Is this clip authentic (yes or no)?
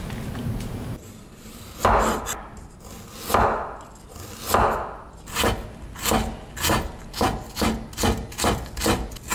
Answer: yes